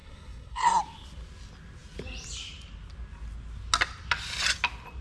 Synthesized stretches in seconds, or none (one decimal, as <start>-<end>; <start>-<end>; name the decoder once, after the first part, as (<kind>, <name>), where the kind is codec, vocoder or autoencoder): 0.0-0.8 (codec, SNAC)